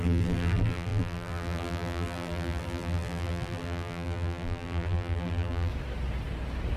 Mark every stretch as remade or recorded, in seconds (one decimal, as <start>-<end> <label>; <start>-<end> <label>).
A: 0.0-5.7 remade; 5.7-6.8 recorded